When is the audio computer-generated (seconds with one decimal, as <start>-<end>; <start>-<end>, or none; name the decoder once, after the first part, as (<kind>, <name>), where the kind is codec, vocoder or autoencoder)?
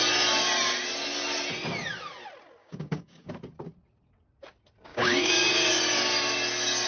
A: 2.6-3.3 (codec, DAC); 4.9-5.5